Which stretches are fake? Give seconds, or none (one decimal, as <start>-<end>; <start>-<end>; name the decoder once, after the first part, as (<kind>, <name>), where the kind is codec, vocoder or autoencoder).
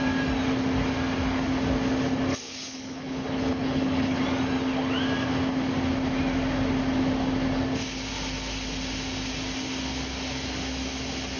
2.3-4.2 (codec, HILCodec)